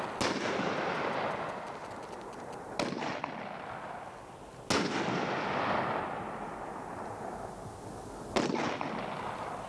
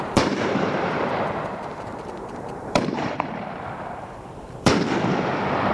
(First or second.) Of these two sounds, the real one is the first